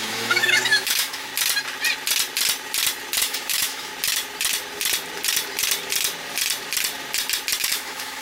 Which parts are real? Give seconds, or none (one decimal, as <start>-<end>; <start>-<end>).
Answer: 1.3-3.2; 3.9-7.6